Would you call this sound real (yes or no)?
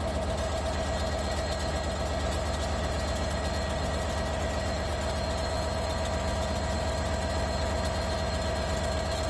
yes